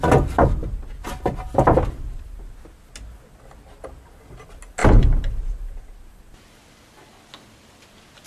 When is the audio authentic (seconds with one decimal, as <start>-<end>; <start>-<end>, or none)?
0.0-8.3